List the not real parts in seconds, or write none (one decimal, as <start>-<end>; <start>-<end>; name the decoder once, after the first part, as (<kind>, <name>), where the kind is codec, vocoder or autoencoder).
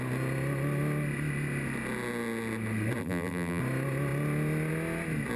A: 3.0-3.6 (vocoder, BigVGAN v2)